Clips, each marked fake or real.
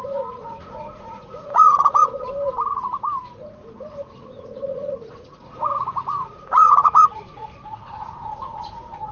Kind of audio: fake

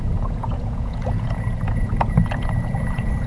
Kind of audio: fake